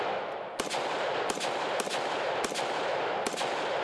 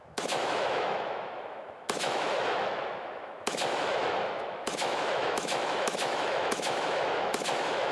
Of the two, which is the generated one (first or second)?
second